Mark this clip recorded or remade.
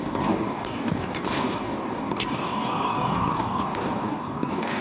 remade